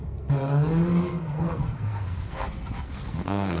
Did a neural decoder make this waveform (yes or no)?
yes